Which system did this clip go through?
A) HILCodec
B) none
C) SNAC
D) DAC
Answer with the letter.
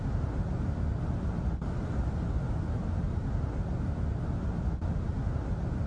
B